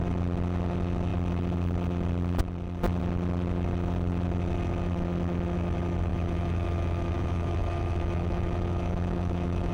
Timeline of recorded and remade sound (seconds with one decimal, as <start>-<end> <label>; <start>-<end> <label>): 0.0-6.1 recorded; 6.1-9.7 remade